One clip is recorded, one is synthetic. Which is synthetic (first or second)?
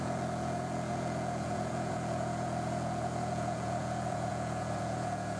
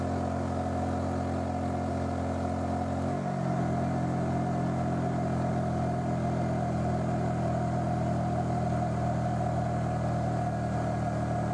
first